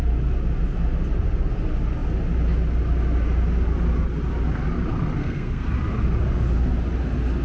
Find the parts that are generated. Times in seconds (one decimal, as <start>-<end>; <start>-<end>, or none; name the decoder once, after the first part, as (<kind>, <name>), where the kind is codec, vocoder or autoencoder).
5.2-5.7 (codec, SNAC)